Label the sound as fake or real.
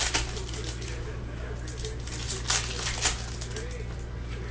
real